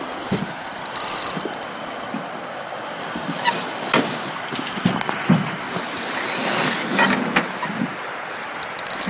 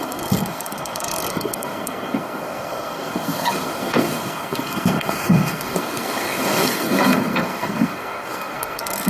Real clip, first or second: first